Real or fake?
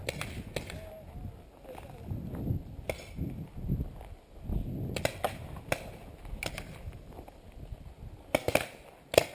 real